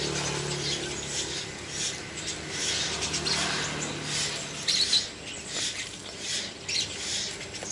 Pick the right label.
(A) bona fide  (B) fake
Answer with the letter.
A